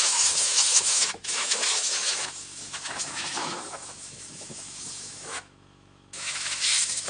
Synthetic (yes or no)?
yes